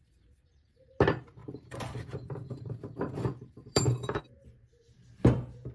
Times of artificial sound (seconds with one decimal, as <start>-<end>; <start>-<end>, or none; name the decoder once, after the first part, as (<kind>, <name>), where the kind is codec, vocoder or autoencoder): 1.4-4.2 (vocoder, BigVGAN v2)

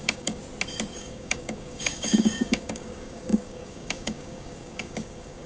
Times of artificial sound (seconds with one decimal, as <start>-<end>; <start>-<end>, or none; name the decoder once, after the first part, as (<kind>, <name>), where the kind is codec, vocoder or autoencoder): 0.0-0.4 (codec, DAC); 1.0-5.5